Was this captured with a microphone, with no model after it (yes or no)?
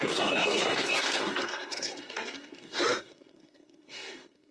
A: no